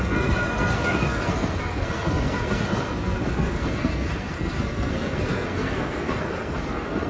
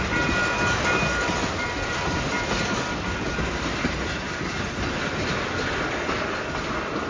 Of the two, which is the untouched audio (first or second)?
second